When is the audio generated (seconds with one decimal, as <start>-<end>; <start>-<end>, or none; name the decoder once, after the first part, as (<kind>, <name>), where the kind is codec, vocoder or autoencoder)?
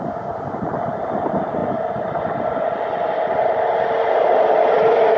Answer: none